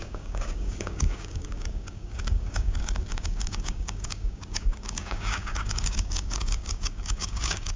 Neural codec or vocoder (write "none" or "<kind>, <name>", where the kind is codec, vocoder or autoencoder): codec, DAC